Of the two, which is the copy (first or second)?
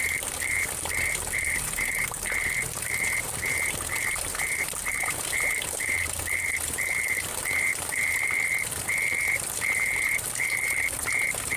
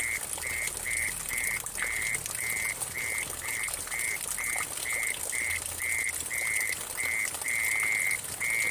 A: first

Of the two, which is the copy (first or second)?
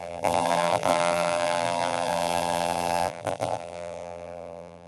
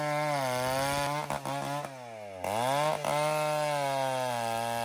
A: first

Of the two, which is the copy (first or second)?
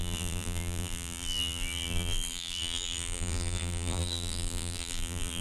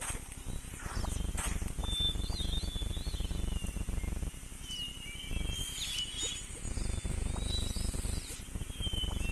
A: first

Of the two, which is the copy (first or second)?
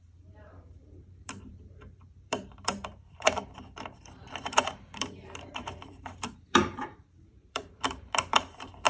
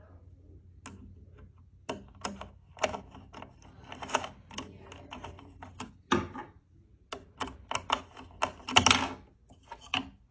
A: first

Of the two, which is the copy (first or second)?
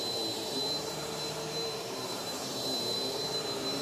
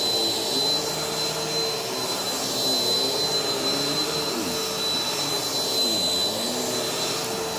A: first